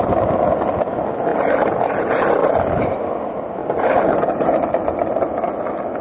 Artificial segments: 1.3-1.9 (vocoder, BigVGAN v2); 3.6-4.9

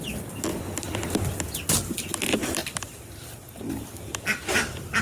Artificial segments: none

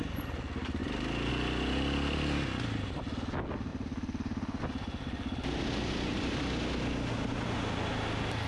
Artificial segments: 0.8-1.3 (vocoder, BigVGAN v2); 3.7-4.6

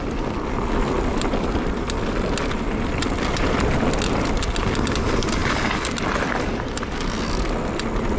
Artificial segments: 1.1-3.9 (vocoder, BigVGAN v2)